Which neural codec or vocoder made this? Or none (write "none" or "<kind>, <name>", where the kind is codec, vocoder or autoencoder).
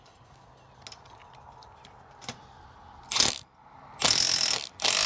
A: none